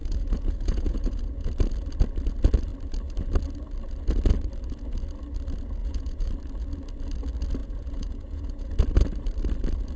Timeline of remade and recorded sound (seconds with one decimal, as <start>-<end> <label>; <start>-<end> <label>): 0.0-1.5 remade; 1.5-5.8 recorded; 5.8-6.3 remade; 6.3-7.6 recorded; 7.6-8.7 remade; 8.7-10.0 recorded